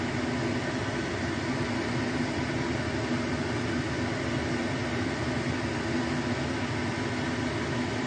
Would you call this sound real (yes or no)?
yes